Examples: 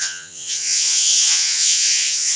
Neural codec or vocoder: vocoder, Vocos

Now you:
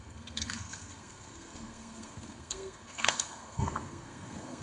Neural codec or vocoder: codec, SNAC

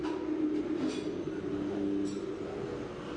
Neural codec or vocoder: none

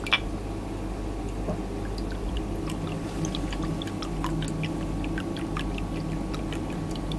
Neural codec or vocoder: none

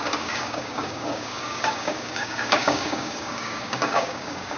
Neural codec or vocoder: codec, DAC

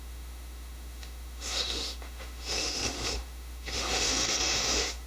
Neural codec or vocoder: autoencoder, DAC-VAE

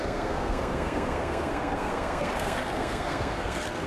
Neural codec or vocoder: codec, SNAC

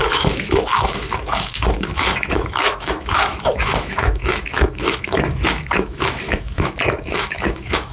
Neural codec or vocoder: autoencoder, DAC-VAE